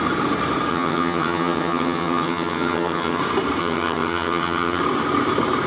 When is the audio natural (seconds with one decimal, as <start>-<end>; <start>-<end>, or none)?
0.0-0.7; 3.2-3.6; 4.8-5.7